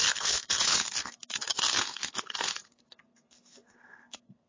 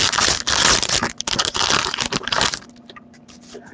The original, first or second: second